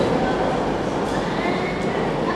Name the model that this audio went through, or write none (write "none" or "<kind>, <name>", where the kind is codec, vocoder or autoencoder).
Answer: none